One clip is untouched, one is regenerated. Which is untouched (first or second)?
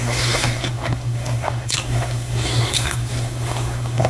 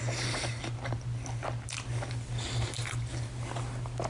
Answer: second